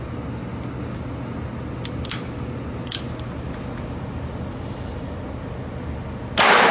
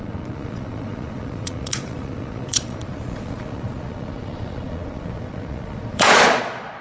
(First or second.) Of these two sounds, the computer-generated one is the second